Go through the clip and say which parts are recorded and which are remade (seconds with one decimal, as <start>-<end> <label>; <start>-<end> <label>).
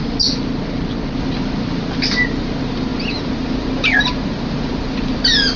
0.0-5.6 recorded